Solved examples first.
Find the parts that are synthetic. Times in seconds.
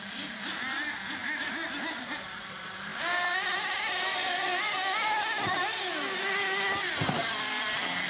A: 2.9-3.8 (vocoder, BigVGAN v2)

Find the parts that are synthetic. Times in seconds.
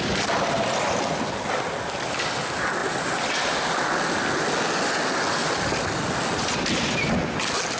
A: 2.8-4.3 (vocoder, BigVGAN v2); 5.4-6.1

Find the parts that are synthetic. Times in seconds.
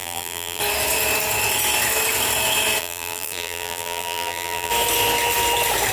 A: 0.0-0.6 (vocoder, BigVGAN v2); 2.8-4.7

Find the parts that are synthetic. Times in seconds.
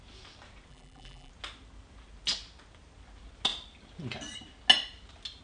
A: 0.7-1.3 (vocoder, BigVGAN v2)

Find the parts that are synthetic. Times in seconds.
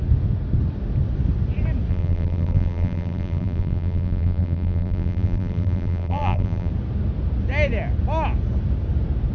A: 1.9-6.7 (vocoder, BigVGAN v2)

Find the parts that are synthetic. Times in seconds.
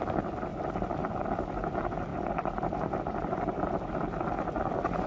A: 0.5-1.1 (vocoder, BigVGAN v2); 2.1-3.9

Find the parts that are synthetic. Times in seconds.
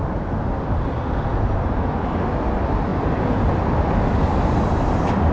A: none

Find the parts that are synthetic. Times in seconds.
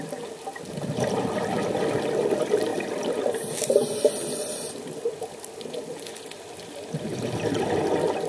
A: 2.7-6.5 (vocoder, BigVGAN v2)